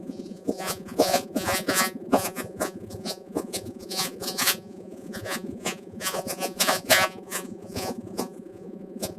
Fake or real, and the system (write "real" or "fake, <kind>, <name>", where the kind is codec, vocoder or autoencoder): fake, vocoder, Vocos